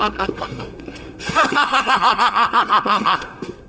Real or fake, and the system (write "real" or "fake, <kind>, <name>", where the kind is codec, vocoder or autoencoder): fake, codec, SNAC